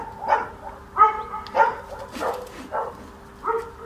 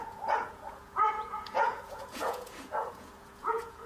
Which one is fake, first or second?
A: second